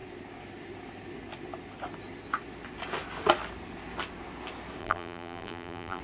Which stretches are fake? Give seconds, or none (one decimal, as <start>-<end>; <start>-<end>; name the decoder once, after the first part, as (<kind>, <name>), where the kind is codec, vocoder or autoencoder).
4.8-6.0 (vocoder, BigVGAN v2)